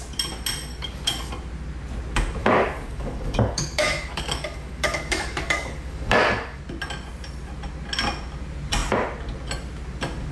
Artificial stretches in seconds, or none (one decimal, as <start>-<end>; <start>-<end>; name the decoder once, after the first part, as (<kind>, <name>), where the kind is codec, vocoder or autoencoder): 0.7-1.3 (codec, DAC); 2.4-6.6